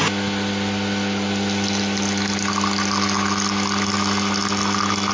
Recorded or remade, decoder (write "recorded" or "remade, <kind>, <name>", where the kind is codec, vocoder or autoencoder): recorded